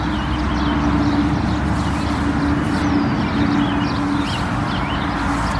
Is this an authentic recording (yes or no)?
yes